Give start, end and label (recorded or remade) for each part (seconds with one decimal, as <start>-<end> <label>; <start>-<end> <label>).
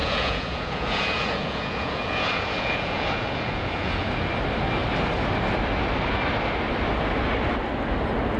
0.0-4.3 remade; 4.3-8.4 recorded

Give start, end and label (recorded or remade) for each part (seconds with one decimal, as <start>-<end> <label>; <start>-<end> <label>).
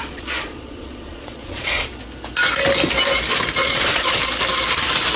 0.0-1.9 remade; 1.9-3.6 recorded; 3.6-4.2 remade; 4.2-5.2 recorded